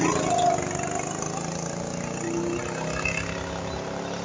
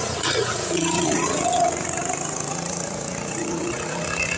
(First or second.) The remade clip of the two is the second